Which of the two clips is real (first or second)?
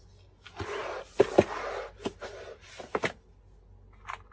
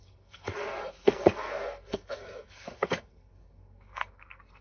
first